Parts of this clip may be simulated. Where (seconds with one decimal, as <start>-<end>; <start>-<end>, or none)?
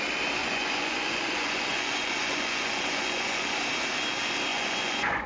0.4-3.6; 4.5-5.3